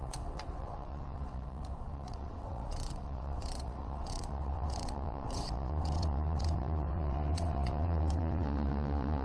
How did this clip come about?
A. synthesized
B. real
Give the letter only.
A